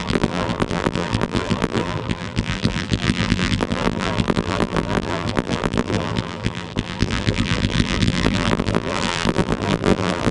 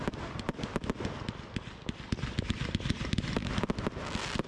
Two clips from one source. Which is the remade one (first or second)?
first